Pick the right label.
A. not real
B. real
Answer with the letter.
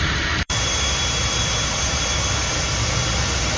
A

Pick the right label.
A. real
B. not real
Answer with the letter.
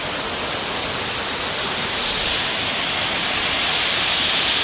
A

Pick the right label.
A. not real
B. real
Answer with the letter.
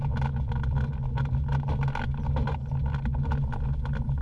B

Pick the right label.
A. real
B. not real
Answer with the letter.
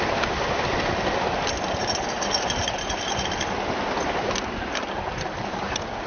A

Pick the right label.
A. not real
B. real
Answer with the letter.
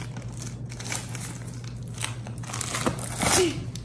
B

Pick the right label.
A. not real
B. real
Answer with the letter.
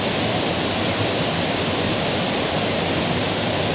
B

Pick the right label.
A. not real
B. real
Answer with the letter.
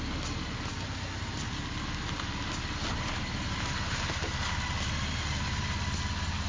B